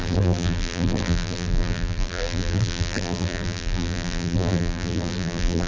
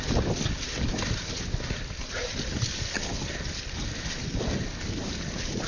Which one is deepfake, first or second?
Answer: first